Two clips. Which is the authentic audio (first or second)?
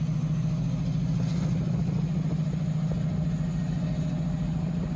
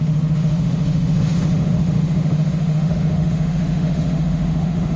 first